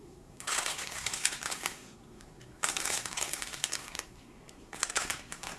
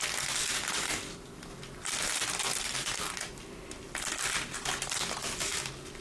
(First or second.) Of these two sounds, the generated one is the first